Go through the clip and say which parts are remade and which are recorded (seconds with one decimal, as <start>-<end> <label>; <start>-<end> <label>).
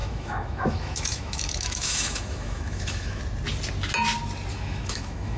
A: 0.0-3.2 remade; 3.2-4.5 recorded; 4.5-5.4 remade